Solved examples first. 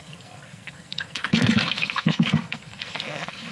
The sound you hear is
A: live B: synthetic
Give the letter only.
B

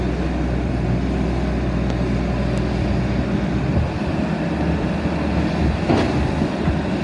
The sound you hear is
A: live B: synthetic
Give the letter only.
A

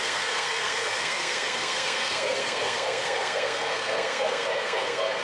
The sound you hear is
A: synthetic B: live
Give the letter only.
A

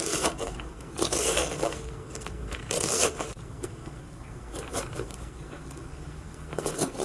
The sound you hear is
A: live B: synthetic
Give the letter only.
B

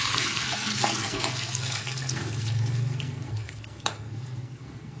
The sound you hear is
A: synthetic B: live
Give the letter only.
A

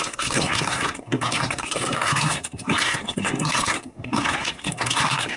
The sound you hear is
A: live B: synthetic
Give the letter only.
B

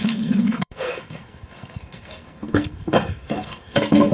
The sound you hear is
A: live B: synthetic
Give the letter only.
B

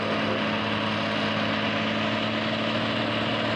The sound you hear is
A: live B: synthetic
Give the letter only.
A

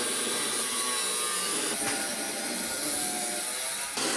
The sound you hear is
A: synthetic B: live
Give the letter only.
B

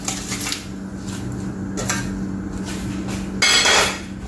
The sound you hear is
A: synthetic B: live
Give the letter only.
B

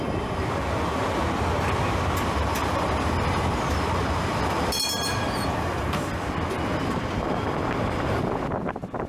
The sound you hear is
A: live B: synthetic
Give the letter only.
A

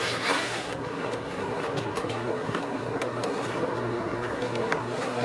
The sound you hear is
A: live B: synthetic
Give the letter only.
B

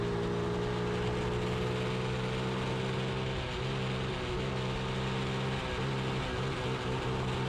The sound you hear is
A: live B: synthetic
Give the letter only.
A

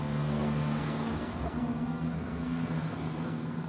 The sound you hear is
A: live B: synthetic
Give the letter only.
B